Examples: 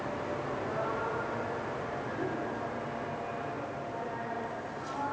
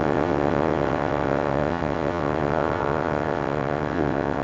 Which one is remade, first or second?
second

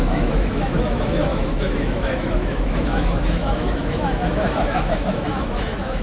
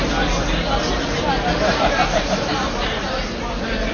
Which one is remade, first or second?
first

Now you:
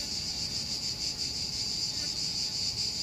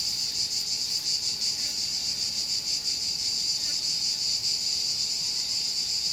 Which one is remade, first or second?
second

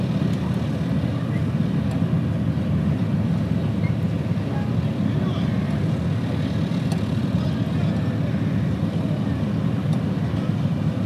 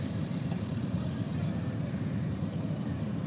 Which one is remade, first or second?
second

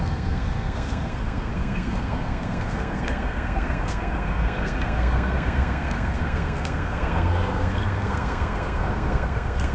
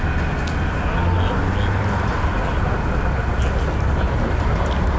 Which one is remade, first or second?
first